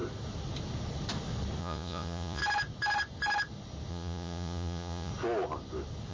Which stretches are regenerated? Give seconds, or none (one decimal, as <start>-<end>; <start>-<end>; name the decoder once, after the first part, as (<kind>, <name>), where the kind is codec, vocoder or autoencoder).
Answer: 1.6-2.4 (vocoder, Vocos); 3.9-5.1